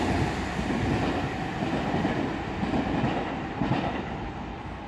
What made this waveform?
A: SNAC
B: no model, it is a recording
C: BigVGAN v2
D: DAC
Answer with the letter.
B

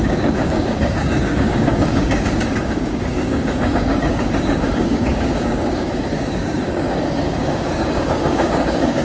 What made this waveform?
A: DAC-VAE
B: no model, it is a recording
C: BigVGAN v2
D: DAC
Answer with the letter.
D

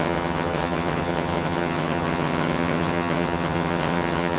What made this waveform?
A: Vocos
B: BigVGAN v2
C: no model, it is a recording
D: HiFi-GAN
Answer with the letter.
D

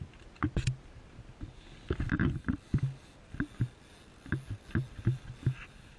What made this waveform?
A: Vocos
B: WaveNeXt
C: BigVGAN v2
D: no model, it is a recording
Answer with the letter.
D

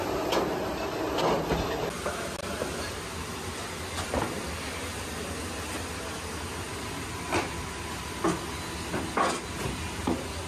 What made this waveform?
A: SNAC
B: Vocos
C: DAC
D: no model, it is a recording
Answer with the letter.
D